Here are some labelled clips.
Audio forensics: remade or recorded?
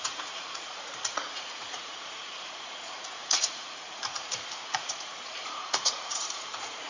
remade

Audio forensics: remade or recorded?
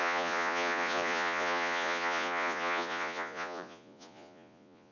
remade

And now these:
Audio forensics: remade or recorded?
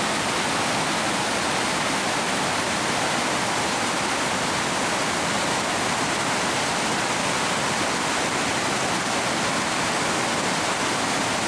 recorded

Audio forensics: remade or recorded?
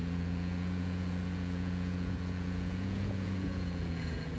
remade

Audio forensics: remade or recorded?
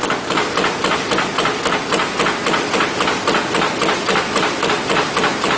recorded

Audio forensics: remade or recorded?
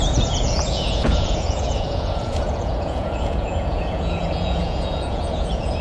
remade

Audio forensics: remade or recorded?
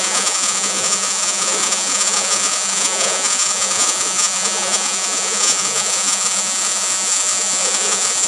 remade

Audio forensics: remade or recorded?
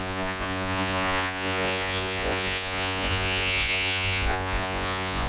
remade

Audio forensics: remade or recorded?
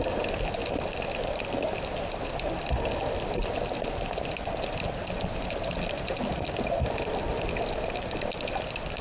recorded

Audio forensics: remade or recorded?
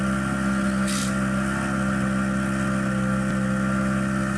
recorded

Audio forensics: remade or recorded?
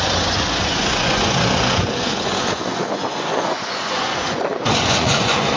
remade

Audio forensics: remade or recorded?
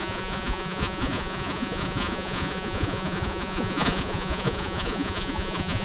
remade